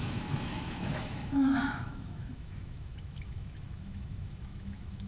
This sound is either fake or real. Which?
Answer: fake